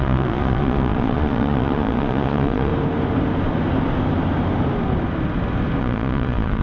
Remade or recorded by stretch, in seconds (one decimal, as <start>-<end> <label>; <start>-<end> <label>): 0.0-2.7 remade; 2.7-5.8 recorded; 5.8-6.6 remade

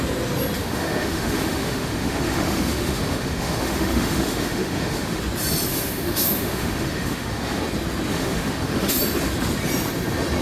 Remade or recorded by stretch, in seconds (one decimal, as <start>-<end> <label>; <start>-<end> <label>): 0.0-0.6 recorded; 0.6-5.2 remade; 5.2-5.7 recorded; 5.7-7.6 remade; 7.6-8.1 recorded; 8.1-9.0 remade; 9.0-10.4 recorded